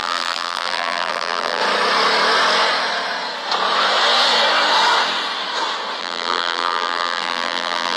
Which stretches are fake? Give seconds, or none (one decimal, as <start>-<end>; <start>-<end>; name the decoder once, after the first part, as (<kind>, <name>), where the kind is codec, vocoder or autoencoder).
0.0-1.6 (vocoder, BigVGAN v2); 6.0-8.0